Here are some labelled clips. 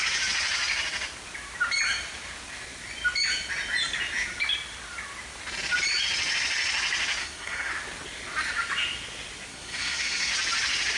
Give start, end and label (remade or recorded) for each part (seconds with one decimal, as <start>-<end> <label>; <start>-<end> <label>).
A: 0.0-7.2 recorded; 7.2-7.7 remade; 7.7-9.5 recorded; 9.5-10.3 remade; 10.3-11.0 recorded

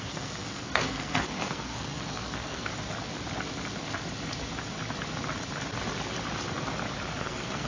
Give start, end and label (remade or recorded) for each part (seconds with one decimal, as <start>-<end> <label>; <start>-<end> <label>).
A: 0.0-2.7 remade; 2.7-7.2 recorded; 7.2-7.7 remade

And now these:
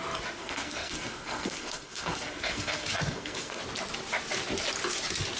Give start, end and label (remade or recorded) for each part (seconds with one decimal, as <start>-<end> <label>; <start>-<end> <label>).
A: 0.0-0.4 recorded; 0.4-3.6 remade; 3.6-5.4 recorded

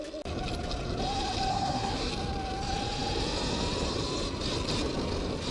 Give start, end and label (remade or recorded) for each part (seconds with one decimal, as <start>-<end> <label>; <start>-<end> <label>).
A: 0.0-1.5 recorded; 1.5-2.1 remade; 2.1-5.5 recorded

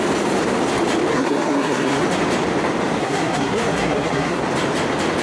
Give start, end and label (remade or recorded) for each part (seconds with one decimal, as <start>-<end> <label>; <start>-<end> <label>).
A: 0.0-1.1 recorded; 1.1-2.0 remade; 2.0-3.0 recorded; 3.0-4.4 remade; 4.4-5.2 recorded

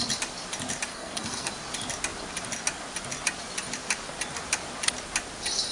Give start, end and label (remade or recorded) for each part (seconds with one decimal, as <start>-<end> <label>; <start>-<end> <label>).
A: 0.0-0.9 recorded; 0.9-1.5 remade; 1.5-5.7 recorded

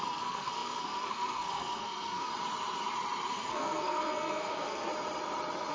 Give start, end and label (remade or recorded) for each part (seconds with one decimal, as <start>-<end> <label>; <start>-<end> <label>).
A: 0.0-2.3 remade; 2.3-3.3 recorded; 3.3-4.9 remade; 4.9-5.7 recorded